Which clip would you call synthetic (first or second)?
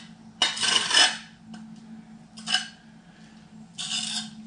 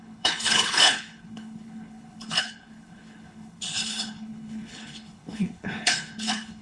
second